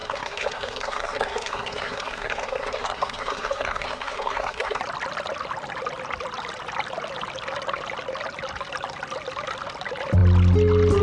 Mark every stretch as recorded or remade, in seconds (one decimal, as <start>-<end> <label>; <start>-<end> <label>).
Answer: 0.0-4.8 remade; 4.8-11.0 recorded